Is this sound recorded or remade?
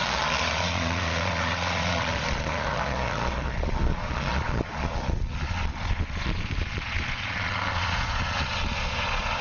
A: remade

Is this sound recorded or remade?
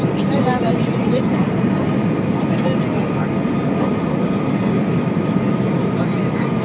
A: recorded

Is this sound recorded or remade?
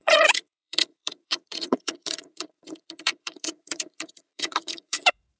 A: remade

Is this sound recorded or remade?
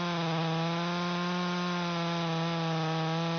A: recorded